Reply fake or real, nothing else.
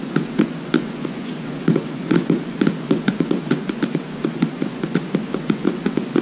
fake